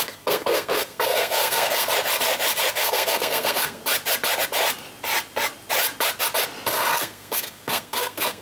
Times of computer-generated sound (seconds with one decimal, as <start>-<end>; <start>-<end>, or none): 0.0-1.9; 2.7-3.8; 6.9-8.4